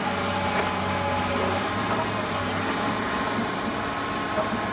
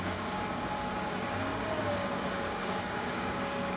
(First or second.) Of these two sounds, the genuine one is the first